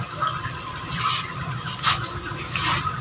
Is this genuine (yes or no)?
yes